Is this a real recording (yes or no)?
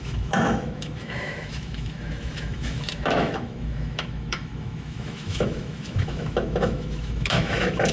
no